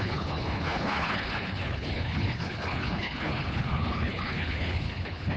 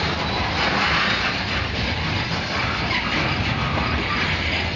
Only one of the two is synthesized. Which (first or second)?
first